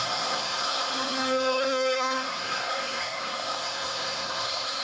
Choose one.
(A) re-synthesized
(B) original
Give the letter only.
A